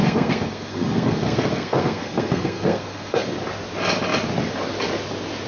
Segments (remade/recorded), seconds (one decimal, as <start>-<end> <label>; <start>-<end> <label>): 0.0-3.3 remade; 3.3-5.5 recorded

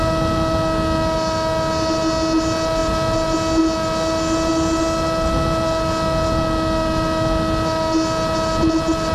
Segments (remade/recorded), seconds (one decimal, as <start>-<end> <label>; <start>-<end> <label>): 0.0-9.1 recorded

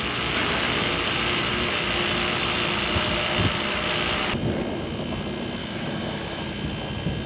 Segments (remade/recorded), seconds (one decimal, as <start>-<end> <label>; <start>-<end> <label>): 0.0-5.6 recorded; 5.6-6.4 remade; 6.4-7.3 recorded

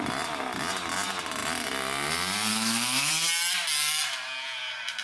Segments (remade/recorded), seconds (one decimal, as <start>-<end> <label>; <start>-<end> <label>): 0.0-2.5 recorded; 2.5-3.1 remade; 3.1-5.0 recorded

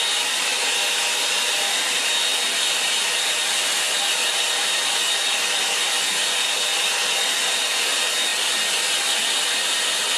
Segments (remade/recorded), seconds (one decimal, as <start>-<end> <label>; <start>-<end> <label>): 0.0-10.2 recorded

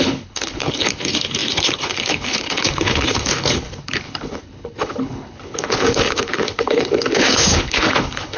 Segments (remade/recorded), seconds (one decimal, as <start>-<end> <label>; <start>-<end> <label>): 0.0-8.4 remade